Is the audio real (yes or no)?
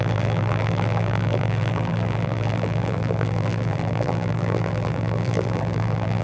no